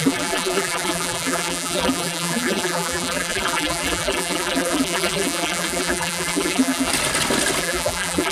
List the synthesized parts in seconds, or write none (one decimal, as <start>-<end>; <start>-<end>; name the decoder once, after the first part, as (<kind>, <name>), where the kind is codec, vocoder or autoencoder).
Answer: 0.0-6.9 (vocoder, BigVGAN v2); 7.6-8.3